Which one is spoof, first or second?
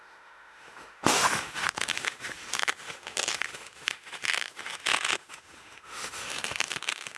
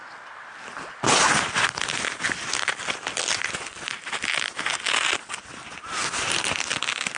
first